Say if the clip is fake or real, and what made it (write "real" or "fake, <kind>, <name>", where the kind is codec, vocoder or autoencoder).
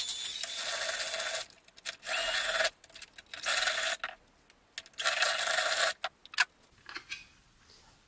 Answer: real